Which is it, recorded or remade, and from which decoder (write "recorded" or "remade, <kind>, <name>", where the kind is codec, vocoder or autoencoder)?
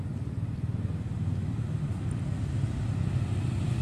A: recorded